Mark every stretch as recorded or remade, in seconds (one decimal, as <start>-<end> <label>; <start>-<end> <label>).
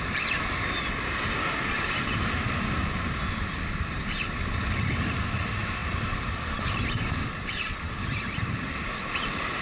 0.0-9.6 remade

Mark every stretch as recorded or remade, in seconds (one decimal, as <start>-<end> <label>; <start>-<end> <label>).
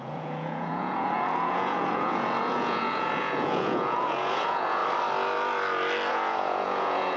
0.0-4.8 remade; 4.8-6.1 recorded; 6.1-7.2 remade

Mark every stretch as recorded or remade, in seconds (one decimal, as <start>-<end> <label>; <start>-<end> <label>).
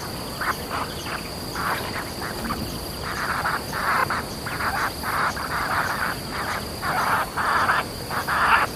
0.0-8.8 recorded